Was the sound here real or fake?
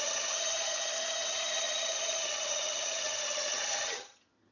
fake